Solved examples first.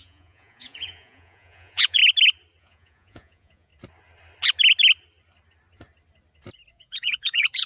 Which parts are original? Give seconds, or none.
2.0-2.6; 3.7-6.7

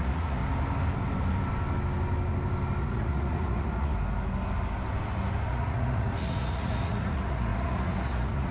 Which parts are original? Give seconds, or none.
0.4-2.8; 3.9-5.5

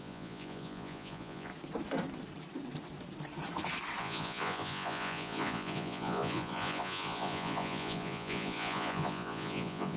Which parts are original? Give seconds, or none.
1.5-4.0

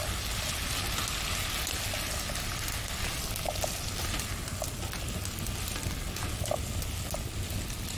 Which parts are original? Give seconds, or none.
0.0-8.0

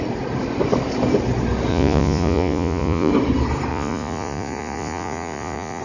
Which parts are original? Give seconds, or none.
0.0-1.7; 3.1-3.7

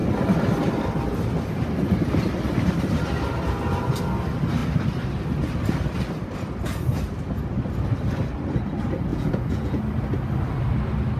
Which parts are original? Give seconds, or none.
0.0-9.1; 9.8-11.2

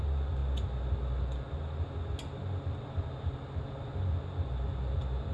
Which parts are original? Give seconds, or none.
0.0-5.3